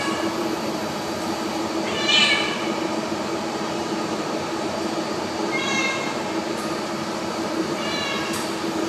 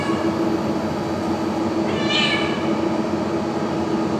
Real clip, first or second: second